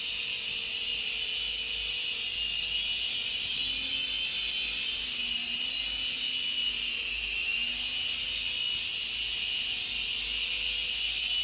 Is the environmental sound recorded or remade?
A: recorded